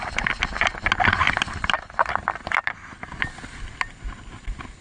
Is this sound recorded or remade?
recorded